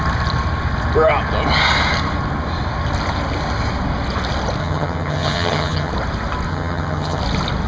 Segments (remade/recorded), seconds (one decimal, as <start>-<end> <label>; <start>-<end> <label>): 0.0-4.6 recorded; 4.6-5.9 remade; 5.9-6.5 recorded; 6.5-7.2 remade; 7.2-7.7 recorded